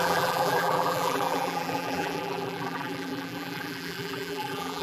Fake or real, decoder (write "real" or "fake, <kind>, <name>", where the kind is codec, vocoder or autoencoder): fake, vocoder, BigVGAN v2